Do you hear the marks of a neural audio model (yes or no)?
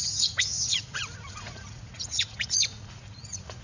yes